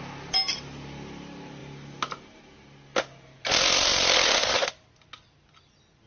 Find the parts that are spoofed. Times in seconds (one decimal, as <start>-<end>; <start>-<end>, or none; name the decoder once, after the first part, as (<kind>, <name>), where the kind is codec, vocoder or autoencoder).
none